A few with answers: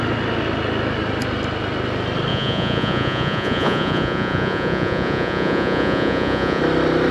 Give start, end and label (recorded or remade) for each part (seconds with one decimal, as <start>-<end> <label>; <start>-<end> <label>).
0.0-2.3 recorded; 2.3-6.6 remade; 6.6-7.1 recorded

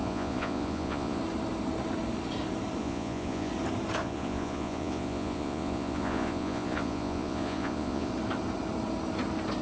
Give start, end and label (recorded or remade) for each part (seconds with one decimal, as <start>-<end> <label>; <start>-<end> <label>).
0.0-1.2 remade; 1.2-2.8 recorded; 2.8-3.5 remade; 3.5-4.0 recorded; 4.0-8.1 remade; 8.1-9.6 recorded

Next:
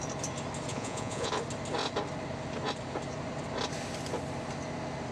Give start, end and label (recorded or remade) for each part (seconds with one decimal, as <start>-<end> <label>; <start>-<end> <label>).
0.0-0.7 recorded; 0.7-1.3 remade; 1.3-5.1 recorded

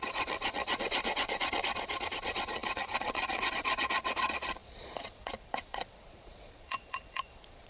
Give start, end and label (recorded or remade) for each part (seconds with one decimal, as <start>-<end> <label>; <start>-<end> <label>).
0.0-7.7 remade

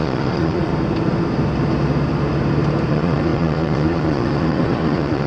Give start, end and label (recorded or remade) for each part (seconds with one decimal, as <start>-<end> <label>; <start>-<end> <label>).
0.0-0.7 remade; 0.7-2.9 recorded; 2.9-5.3 remade

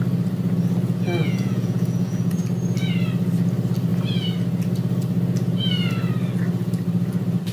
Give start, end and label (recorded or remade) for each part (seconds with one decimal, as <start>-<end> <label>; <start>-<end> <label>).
0.0-1.2 recorded; 1.2-2.4 remade; 2.4-7.5 recorded

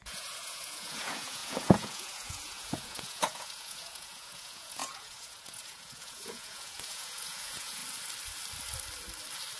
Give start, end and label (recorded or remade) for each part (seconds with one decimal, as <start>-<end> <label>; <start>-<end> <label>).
0.0-7.8 remade; 7.8-9.6 recorded

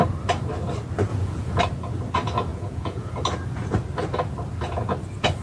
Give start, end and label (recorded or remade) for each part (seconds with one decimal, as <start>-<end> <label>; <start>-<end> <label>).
0.0-1.1 recorded; 1.1-1.6 remade; 1.6-2.5 recorded; 2.5-3.1 remade; 3.1-5.4 recorded